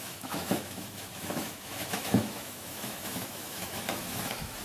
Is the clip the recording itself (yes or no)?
no